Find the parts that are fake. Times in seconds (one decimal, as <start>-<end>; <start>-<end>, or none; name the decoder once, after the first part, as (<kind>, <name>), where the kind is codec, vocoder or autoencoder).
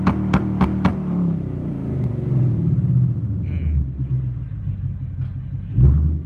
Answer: 0.9-3.5 (vocoder, BigVGAN v2)